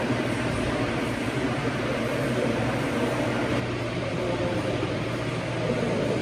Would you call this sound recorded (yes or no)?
no